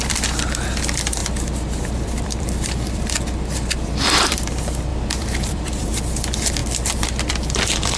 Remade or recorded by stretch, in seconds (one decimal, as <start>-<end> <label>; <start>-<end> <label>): 0.0-1.2 recorded; 1.2-4.5 remade; 4.5-4.9 recorded; 4.9-5.9 remade; 5.9-8.0 recorded